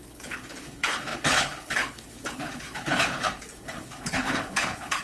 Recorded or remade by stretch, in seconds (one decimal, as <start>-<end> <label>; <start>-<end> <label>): 0.0-5.0 remade